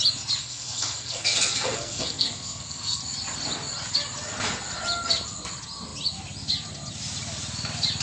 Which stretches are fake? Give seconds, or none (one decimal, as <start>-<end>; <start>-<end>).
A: 0.4-3.0